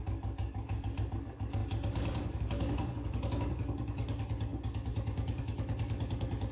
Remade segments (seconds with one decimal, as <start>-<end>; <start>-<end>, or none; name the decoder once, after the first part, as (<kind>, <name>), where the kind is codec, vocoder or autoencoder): 0.0-6.5 (codec, DAC)